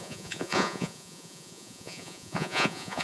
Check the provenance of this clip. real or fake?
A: fake